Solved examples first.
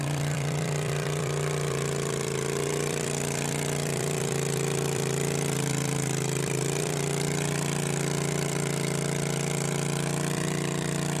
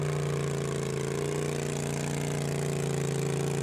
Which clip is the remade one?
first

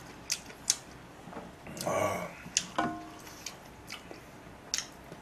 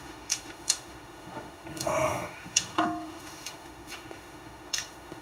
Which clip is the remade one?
second